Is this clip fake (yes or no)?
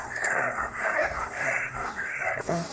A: yes